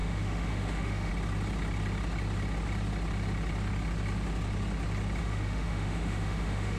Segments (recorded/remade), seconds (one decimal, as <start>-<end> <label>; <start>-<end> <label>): 0.0-1.1 remade; 1.1-5.2 recorded; 5.2-6.8 remade